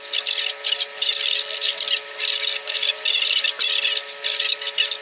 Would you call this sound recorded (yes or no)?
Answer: yes